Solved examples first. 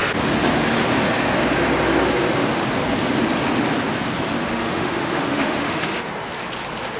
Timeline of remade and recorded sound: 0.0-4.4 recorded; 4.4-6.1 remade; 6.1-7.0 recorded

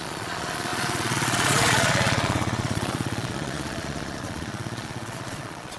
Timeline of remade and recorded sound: 0.0-5.8 remade

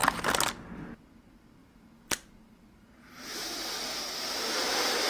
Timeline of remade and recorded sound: 0.0-1.6 recorded; 1.6-5.1 remade